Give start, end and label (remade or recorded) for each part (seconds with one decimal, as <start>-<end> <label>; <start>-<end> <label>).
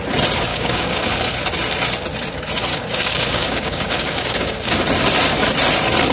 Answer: 0.0-0.5 recorded; 0.5-1.0 remade; 1.0-2.7 recorded; 2.7-4.7 remade; 4.7-6.1 recorded